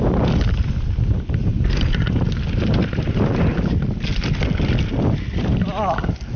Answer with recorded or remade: recorded